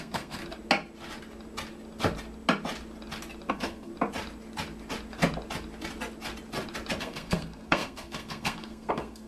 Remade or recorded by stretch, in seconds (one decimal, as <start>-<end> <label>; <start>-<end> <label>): 0.0-0.4 remade; 0.4-3.5 recorded; 3.5-3.9 remade; 3.9-7.0 recorded; 7.0-9.3 remade